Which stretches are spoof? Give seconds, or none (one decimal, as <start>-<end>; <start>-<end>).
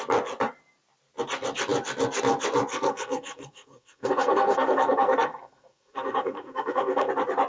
2.7-7.1